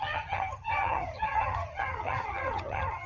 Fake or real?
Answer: fake